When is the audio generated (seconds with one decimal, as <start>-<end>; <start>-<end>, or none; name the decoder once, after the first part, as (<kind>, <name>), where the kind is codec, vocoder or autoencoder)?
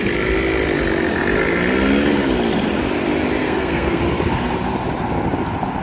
3.4-4.0 (codec, SNAC)